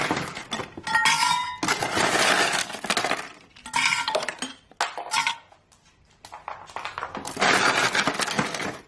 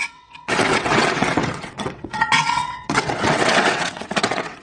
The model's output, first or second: second